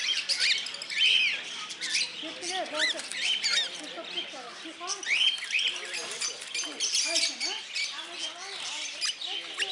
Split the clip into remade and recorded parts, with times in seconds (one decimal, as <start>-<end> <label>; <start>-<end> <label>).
0.0-9.7 recorded